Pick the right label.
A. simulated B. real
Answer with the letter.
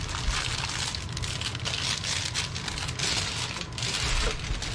B